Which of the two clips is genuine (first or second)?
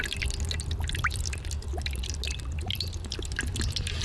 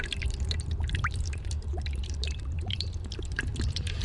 first